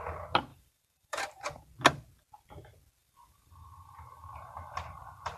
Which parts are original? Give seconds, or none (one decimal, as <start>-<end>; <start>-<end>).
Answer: 0.0-0.5; 1.6-3.0